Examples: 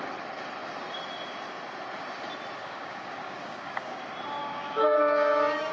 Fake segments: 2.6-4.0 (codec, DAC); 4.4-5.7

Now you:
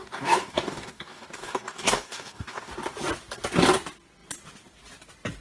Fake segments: 0.0-2.7 (codec, DAC)

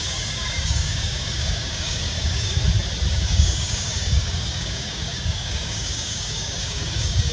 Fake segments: 0.0-2.6 (codec, DAC); 3.1-7.3

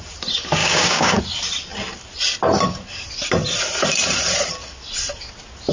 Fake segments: 0.6-1.2 (codec, DAC)

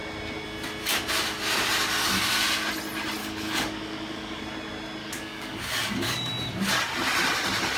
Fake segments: 3.2-4.4 (codec, DAC); 5.0-6.3